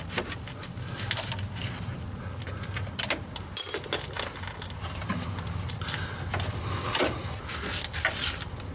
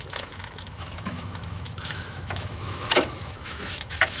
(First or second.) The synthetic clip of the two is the second